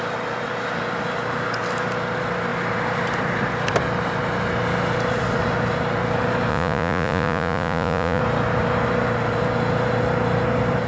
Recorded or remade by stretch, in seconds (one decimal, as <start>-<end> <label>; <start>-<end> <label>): 0.0-6.5 recorded; 6.5-8.2 remade; 8.2-10.9 recorded